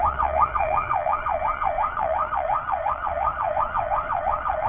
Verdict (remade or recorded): remade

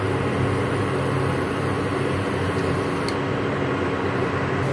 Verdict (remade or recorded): recorded